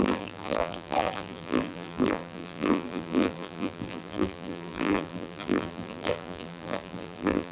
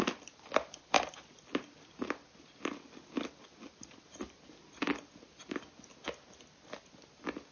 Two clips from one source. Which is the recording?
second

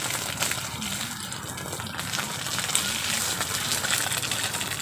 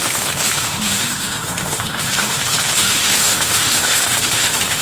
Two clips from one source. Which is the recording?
first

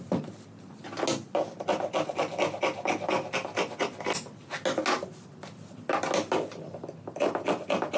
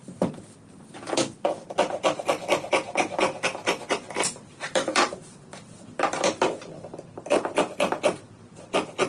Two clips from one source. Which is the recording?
first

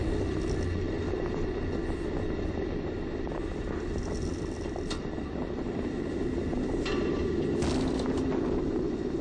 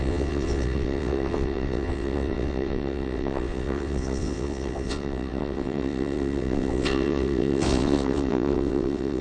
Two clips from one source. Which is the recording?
first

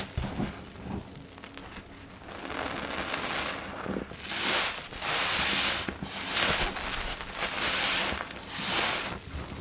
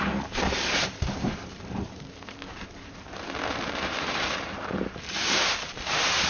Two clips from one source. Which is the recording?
first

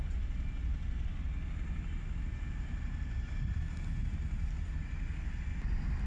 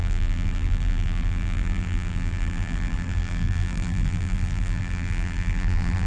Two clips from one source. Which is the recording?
first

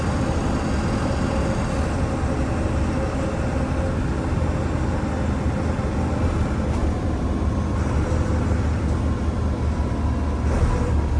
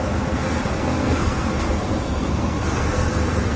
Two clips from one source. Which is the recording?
first